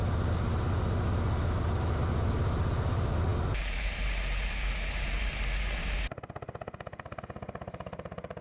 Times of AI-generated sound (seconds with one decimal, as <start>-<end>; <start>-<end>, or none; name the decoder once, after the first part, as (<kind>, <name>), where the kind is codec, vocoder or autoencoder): none